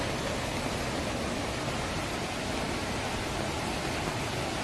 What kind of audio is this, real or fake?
real